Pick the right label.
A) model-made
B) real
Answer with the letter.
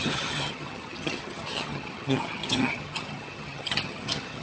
A